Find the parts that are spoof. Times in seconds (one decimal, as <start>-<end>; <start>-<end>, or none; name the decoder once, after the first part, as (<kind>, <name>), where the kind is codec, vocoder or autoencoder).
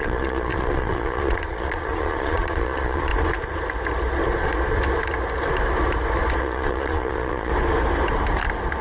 0.0-3.1 (vocoder, Vocos); 6.4-7.5